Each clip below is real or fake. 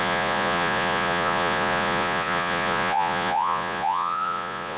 fake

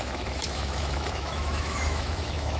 fake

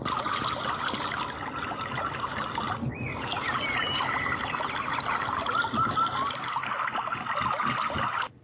real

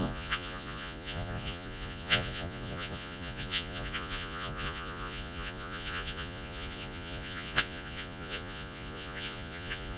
fake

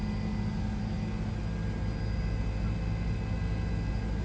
real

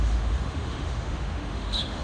fake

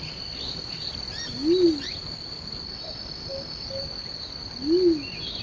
real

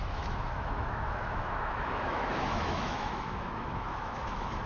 fake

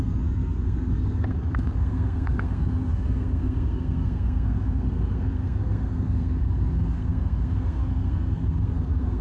fake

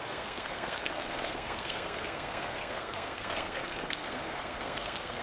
fake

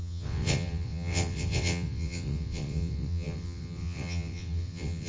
fake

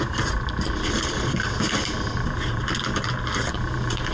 fake